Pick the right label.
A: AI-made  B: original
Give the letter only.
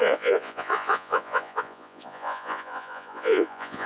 A